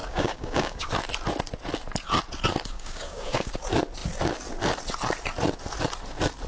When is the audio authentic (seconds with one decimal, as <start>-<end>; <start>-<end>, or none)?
0.9-2.7; 3.5-6.5